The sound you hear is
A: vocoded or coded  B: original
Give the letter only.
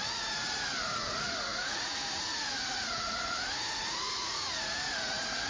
A